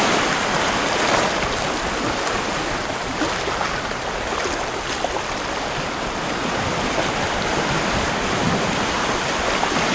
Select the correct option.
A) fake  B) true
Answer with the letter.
B